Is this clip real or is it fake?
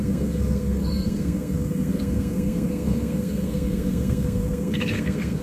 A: fake